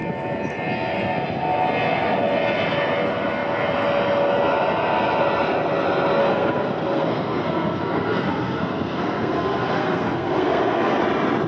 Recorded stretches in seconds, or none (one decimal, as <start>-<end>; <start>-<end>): 0.0-6.2; 11.0-11.5